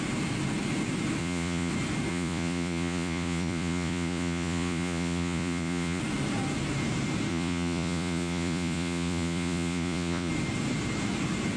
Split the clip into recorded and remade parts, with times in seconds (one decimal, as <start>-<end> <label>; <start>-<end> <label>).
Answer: 0.0-1.2 recorded; 1.2-1.7 remade; 1.7-2.1 recorded; 2.1-6.0 remade; 6.0-7.3 recorded; 7.3-10.3 remade; 10.3-11.6 recorded